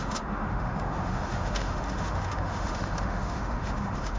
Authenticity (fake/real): fake